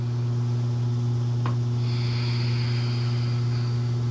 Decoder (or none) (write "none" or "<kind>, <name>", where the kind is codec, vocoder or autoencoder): none